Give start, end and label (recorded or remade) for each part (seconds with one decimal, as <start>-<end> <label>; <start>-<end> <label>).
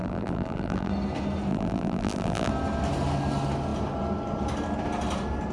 0.0-0.9 remade; 0.9-1.5 recorded; 1.5-2.5 remade; 2.5-5.5 recorded